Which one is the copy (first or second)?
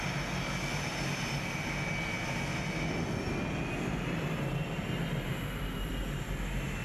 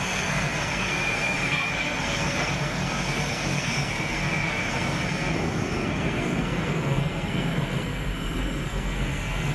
second